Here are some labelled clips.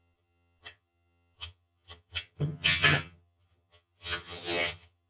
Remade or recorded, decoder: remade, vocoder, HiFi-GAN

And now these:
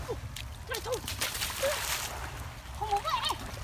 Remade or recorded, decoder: recorded